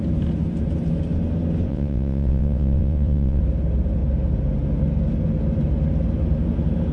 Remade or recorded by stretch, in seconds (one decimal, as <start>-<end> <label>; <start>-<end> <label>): 0.0-1.7 recorded; 1.7-3.4 remade; 3.4-6.9 recorded